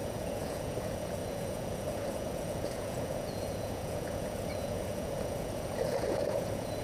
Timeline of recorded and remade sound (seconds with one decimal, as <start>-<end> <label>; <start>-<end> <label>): 0.0-6.8 remade